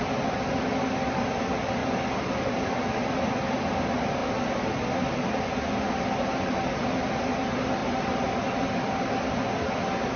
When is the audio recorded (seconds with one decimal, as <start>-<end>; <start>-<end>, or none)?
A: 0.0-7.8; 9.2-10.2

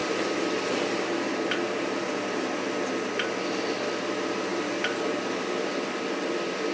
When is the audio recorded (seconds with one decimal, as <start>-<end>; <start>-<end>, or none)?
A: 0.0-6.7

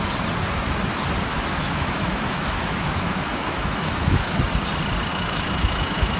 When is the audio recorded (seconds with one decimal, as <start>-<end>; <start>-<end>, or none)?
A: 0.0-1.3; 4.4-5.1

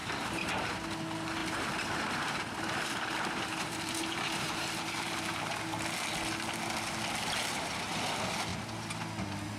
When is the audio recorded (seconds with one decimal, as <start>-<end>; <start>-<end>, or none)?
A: 0.7-1.4; 5.6-9.6